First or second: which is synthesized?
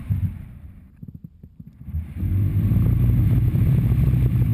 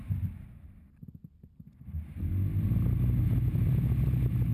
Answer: first